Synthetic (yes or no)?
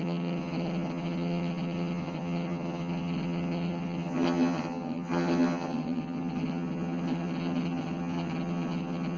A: yes